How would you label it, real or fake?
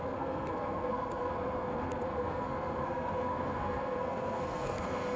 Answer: fake